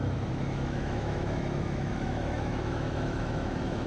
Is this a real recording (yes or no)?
no